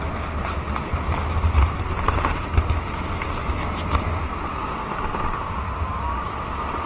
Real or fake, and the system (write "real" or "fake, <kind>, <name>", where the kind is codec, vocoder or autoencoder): real